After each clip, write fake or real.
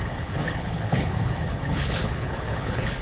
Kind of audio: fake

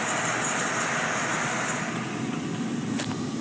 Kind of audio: real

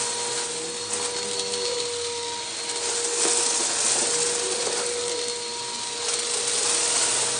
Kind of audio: real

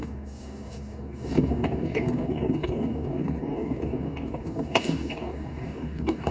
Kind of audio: fake